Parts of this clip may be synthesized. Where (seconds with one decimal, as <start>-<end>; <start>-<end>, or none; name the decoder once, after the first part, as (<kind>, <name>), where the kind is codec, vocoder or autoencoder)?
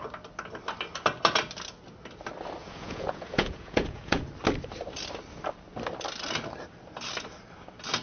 2.6-4.2 (vocoder, Vocos)